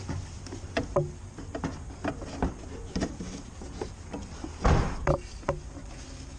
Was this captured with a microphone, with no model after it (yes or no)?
yes